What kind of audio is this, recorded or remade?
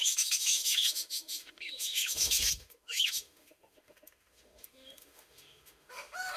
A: remade